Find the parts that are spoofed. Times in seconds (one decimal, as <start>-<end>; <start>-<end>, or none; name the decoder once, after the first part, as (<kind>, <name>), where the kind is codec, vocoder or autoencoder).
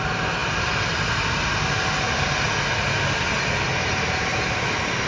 none